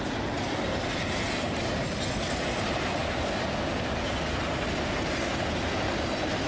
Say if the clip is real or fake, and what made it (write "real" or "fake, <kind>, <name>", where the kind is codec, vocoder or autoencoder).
real